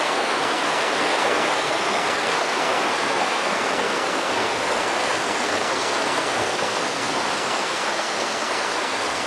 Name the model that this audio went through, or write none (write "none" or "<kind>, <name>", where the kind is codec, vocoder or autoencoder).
codec, SNAC